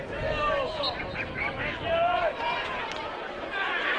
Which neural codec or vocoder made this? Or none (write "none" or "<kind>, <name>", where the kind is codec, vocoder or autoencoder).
none